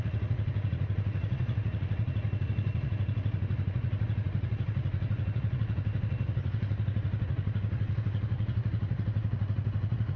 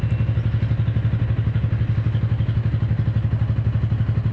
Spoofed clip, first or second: first